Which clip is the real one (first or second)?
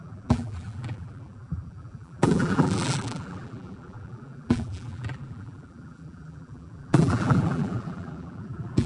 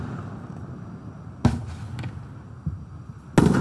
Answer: second